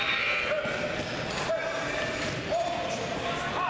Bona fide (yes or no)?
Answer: yes